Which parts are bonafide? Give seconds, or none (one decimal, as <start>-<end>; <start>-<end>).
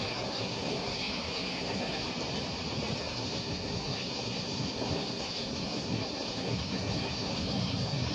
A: 2.1-3.0